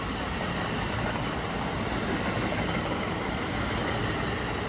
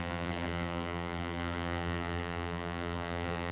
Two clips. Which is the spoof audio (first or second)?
second